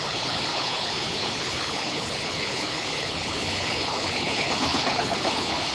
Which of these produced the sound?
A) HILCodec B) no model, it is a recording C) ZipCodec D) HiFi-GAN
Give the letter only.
A